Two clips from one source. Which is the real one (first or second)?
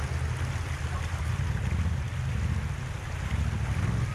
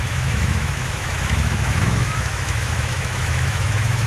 first